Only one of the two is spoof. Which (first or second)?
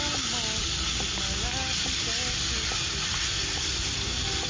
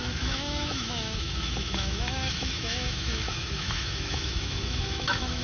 second